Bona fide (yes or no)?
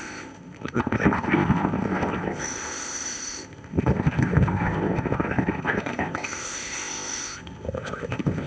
no